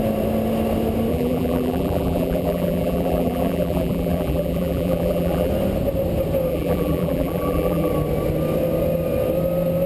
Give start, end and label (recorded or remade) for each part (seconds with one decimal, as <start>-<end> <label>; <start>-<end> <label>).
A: 0.0-1.1 recorded; 1.1-5.5 remade; 5.5-6.5 recorded; 6.5-7.9 remade; 7.9-9.9 recorded